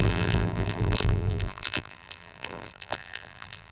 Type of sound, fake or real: fake